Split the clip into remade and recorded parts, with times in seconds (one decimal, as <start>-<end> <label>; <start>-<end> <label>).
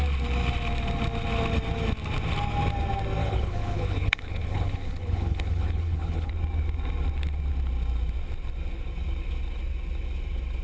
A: 0.0-3.2 recorded; 3.2-6.3 remade; 6.3-10.6 recorded